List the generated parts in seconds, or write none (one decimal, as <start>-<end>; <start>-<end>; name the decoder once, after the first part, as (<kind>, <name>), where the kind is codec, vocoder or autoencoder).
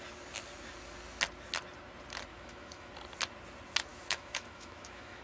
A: 2.3-2.9 (autoencoder, DAC-VAE); 3.9-5.2